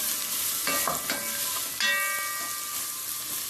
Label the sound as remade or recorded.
recorded